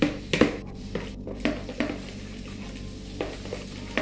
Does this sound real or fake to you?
real